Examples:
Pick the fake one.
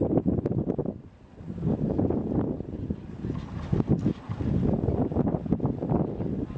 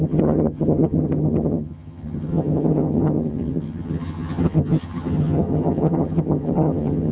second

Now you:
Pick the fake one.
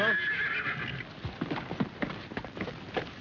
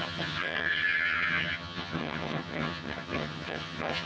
second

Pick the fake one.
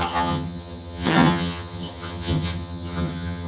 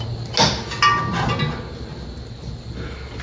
first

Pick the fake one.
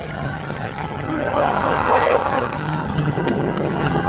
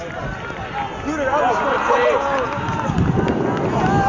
first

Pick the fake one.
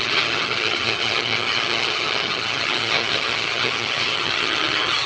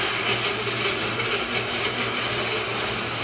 first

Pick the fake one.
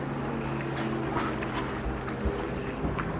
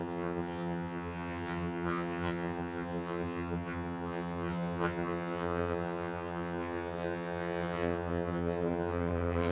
second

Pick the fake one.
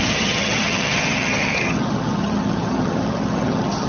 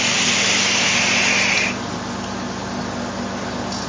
first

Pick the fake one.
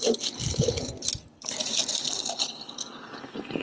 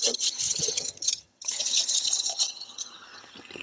second